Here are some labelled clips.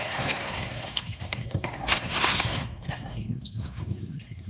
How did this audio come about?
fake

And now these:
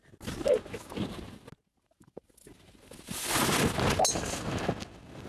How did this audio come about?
real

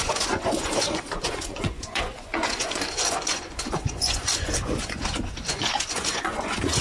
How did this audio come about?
fake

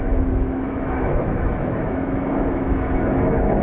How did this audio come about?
fake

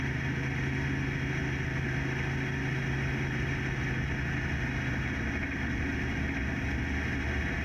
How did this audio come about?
real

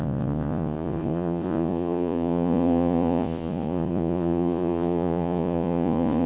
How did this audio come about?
fake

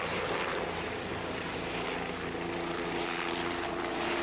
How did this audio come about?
real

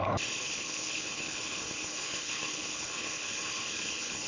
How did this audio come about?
fake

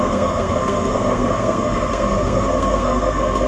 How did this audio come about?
fake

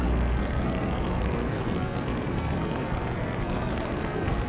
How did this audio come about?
fake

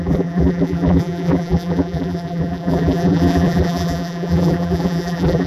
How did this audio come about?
fake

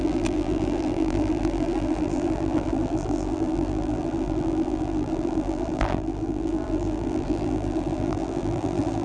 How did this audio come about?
fake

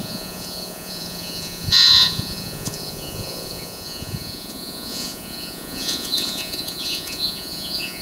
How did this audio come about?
fake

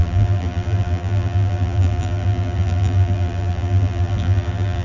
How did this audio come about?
fake